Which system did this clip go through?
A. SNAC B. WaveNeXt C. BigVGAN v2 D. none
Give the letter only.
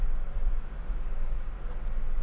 D